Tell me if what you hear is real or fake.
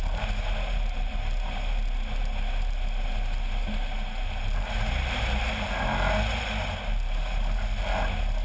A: real